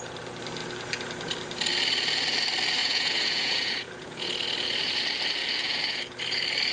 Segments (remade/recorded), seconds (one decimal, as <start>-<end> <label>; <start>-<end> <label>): 0.0-2.8 recorded; 2.8-4.3 remade; 4.3-5.4 recorded; 5.4-6.0 remade; 6.0-6.7 recorded